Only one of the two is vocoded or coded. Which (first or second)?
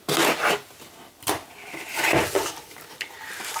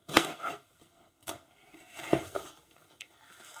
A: second